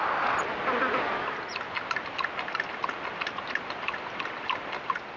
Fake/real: real